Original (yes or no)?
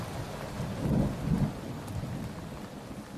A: yes